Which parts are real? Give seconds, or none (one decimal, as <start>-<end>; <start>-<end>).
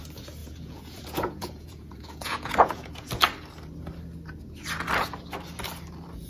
0.0-0.4; 3.1-6.3